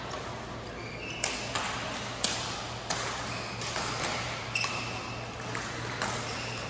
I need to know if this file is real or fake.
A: real